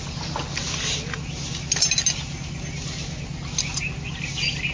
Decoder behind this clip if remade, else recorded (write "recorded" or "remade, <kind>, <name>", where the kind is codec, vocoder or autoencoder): recorded